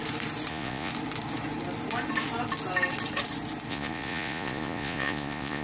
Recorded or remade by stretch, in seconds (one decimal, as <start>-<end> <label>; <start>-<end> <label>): 0.0-0.5 recorded; 0.5-0.9 remade; 0.9-3.7 recorded; 3.7-5.6 remade